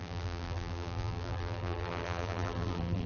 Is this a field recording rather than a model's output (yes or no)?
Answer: no